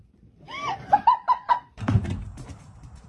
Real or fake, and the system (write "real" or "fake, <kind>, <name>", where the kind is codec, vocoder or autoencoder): fake, vocoder, BigVGAN v2